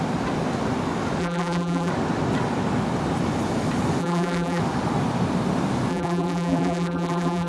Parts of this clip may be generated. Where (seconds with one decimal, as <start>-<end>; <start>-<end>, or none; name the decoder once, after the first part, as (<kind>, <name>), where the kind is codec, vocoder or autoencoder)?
1.2-1.9 (vocoder, BigVGAN v2); 4.0-4.6; 5.9-7.5

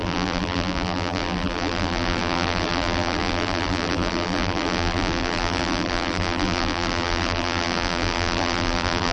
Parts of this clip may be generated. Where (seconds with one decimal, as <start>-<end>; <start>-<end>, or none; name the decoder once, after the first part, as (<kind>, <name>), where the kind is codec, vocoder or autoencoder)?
0.0-9.1 (vocoder, BigVGAN v2)

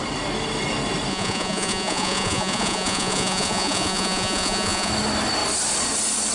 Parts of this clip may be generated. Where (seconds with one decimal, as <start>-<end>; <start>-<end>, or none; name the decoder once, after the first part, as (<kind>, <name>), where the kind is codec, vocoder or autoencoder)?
1.1-4.9 (vocoder, Vocos)